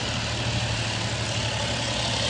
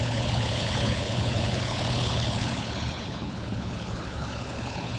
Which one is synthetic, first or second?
second